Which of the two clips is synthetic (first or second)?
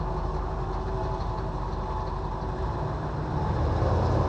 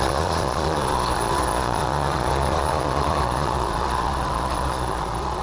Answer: second